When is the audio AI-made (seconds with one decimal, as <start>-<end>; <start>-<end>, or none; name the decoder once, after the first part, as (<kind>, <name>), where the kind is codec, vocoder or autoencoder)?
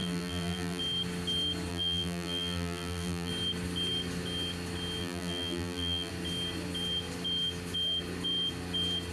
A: 0.0-0.8 (vocoder, BigVGAN v2); 1.7-3.3; 5.0-6.1